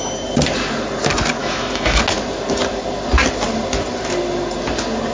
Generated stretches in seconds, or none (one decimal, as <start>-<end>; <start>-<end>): 1.4-2.0